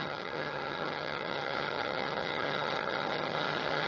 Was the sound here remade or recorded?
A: remade